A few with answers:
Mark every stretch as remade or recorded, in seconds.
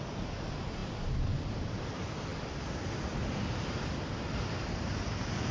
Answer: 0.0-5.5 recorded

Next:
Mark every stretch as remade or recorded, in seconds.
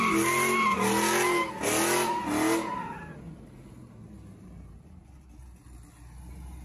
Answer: 0.0-6.6 recorded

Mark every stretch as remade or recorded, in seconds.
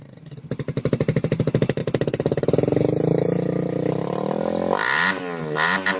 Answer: 0.0-6.0 recorded